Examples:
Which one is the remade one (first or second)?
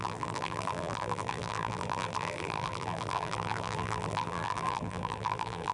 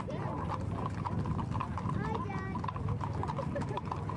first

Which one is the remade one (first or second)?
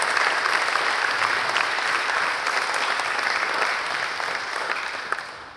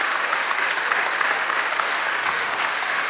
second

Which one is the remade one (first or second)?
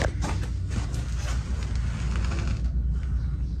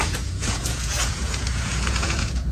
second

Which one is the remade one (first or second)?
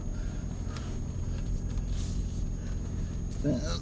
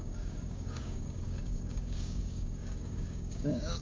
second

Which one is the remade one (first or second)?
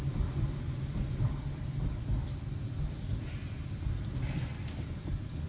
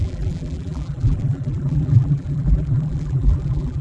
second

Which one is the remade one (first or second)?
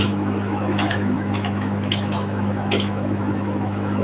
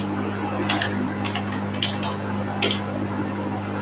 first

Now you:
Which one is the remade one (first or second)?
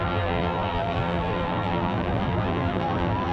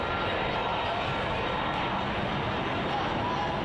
first